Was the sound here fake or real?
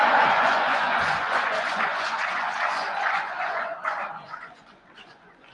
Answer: fake